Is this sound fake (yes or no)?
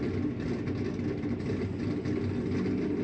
no